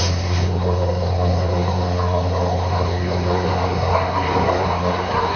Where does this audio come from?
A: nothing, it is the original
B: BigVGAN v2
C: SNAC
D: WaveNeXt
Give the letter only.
C